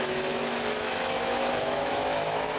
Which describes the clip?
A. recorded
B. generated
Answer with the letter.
B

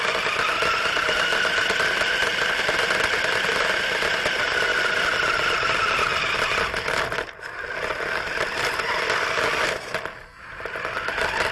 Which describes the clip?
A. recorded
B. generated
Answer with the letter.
A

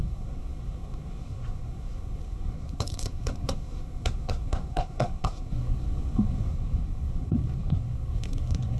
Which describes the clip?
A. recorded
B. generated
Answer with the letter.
B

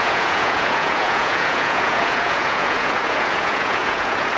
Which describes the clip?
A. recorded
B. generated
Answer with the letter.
B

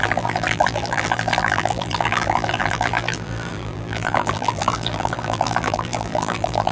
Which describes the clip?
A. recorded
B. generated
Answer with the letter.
B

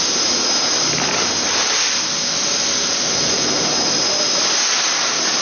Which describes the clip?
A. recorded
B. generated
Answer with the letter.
A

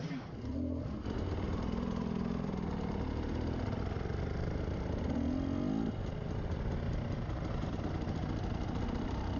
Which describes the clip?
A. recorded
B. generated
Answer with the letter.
A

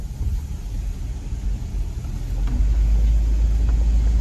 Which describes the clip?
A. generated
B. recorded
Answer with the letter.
B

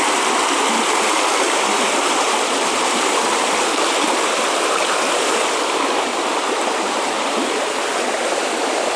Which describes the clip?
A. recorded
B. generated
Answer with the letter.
B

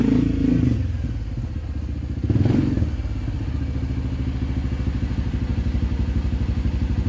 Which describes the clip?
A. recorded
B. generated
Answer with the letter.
A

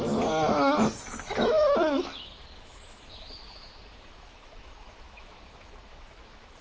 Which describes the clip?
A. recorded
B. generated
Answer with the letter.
B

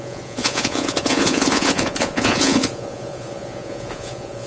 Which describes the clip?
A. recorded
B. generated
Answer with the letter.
B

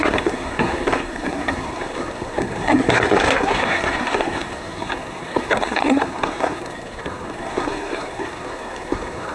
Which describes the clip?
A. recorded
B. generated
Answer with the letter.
B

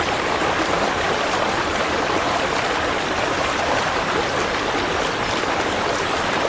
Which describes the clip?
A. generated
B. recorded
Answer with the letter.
A